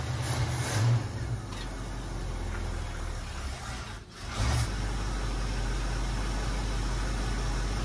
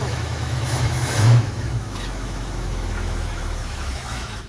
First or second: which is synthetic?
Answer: second